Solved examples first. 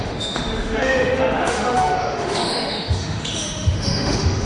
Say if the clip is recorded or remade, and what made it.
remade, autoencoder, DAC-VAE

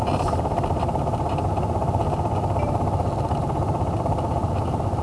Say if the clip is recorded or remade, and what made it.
recorded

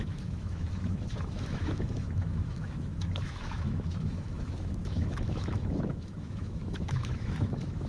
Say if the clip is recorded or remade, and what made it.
remade, autoencoder, DAC-VAE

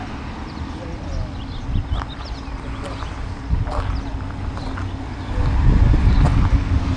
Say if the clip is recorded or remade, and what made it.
recorded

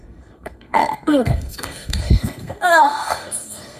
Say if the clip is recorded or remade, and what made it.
remade, codec, SNAC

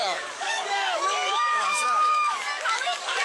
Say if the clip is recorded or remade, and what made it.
remade, codec, DAC